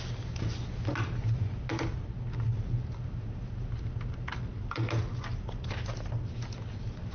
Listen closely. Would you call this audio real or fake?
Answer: real